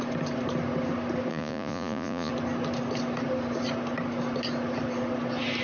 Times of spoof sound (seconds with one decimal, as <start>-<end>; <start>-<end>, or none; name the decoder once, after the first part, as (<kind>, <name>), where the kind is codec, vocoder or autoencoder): 1.3-2.3 (vocoder, Vocos)